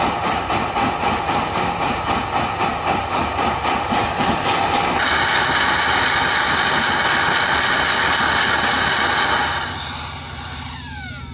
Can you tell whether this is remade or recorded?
recorded